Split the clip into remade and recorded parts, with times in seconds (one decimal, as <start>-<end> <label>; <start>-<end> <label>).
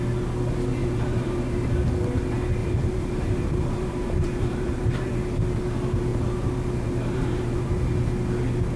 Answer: 0.0-0.8 recorded; 0.8-1.9 remade; 1.9-2.6 recorded; 2.6-5.1 remade; 5.1-6.1 recorded; 6.1-7.7 remade; 7.7-8.8 recorded